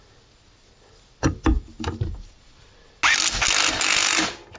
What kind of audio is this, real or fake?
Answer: real